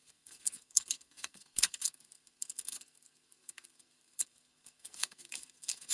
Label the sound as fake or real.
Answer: fake